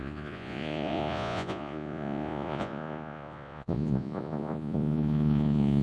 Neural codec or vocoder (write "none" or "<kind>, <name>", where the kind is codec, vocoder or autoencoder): vocoder, Vocos